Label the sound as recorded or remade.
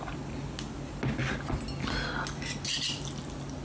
recorded